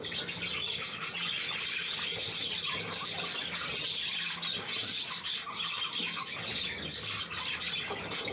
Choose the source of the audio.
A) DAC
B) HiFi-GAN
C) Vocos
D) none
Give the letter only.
D